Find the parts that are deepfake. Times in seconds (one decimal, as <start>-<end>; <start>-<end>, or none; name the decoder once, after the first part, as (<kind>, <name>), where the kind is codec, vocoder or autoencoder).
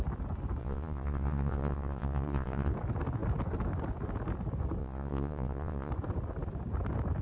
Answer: 0.6-2.7 (vocoder, Vocos); 4.8-5.9